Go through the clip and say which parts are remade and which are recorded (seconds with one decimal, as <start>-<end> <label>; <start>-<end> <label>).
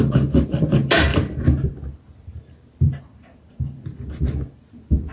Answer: 0.0-5.1 recorded